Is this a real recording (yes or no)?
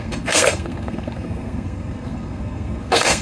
no